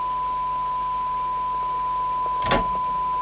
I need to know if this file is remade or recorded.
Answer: recorded